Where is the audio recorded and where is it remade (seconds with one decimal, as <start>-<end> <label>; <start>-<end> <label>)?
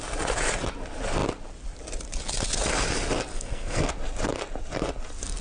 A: 0.0-3.3 recorded; 3.3-3.9 remade; 3.9-5.4 recorded